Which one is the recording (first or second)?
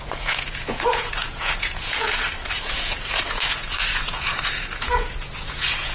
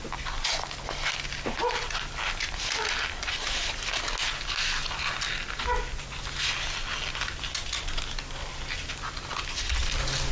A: second